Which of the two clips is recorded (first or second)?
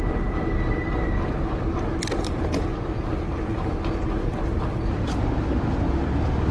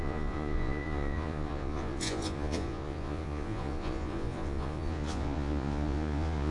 first